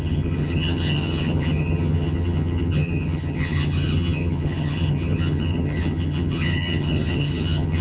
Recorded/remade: remade